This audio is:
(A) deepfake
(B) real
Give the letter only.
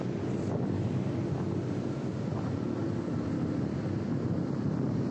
B